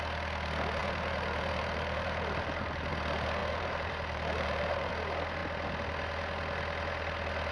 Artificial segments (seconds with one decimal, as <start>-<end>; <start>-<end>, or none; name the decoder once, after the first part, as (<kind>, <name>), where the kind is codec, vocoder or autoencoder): 0.8-2.9 (vocoder, BigVGAN v2); 3.4-4.9